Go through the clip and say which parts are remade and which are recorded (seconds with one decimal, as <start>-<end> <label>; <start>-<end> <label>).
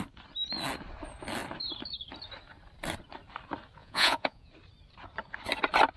0.0-3.8 recorded; 3.8-4.5 remade; 4.5-6.0 recorded